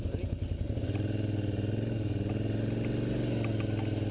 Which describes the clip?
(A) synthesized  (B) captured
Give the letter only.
B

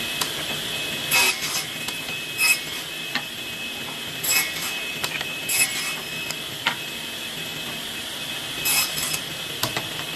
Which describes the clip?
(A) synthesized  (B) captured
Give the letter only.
A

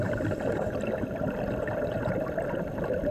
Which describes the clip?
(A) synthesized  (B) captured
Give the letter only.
A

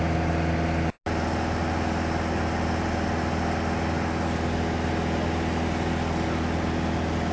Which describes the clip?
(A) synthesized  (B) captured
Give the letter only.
B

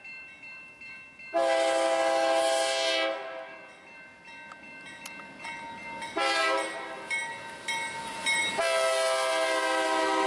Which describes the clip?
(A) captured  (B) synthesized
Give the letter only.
A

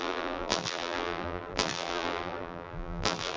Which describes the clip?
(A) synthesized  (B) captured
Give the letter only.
A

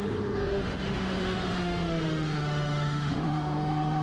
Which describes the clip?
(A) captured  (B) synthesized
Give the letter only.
B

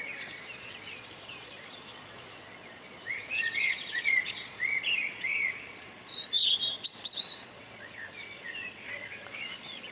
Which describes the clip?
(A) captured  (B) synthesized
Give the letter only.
B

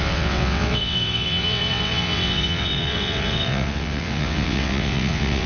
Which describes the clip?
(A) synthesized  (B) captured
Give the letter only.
A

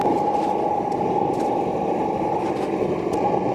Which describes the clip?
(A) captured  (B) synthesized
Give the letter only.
A